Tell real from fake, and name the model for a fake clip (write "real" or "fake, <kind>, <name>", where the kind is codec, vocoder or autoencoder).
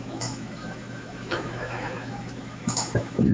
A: fake, autoencoder, DAC-VAE